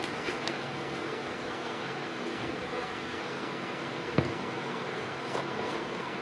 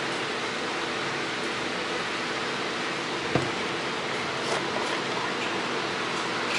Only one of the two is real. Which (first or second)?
second